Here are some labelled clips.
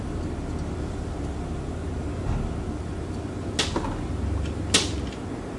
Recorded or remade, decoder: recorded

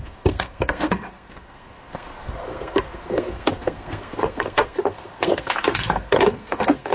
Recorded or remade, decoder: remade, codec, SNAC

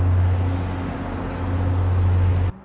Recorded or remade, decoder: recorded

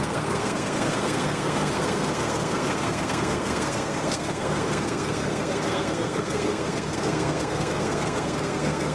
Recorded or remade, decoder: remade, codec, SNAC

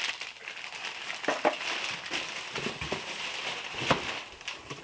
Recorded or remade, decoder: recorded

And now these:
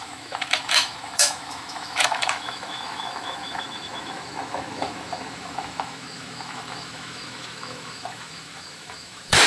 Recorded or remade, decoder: remade, autoencoder, DAC-VAE